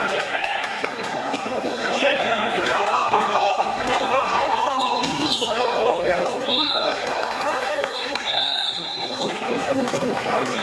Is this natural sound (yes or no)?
no